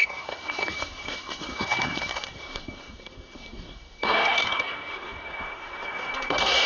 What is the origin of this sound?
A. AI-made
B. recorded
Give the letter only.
A